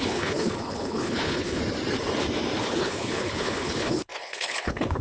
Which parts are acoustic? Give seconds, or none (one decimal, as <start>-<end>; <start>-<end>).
1.6-2.6